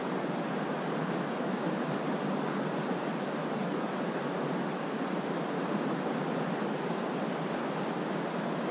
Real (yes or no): yes